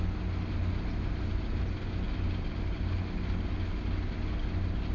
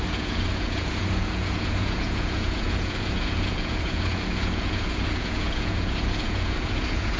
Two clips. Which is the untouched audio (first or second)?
first